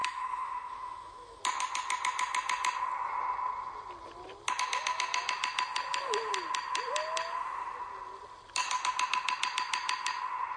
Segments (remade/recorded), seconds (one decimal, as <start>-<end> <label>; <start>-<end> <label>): 0.0-1.4 remade; 1.4-10.6 recorded

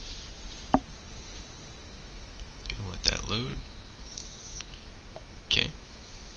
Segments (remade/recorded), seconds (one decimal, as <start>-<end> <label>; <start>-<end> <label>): 0.0-1.8 recorded; 1.8-3.0 remade; 3.0-3.5 recorded; 3.5-6.4 remade

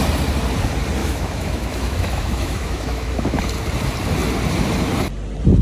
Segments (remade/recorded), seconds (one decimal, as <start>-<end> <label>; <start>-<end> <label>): 0.0-1.0 recorded; 1.0-3.4 remade; 3.4-5.6 recorded